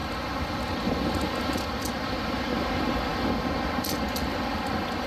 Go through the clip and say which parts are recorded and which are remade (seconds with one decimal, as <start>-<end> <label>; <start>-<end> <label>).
0.0-5.1 recorded